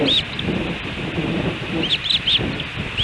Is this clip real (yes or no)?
yes